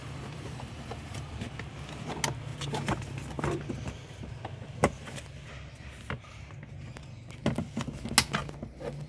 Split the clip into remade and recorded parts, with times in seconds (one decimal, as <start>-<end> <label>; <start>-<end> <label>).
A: 0.0-1.3 remade; 1.3-8.4 recorded; 8.4-9.1 remade